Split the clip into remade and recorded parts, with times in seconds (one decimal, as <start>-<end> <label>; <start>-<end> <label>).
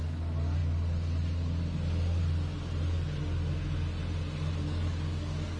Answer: 0.0-4.6 recorded; 4.6-5.6 remade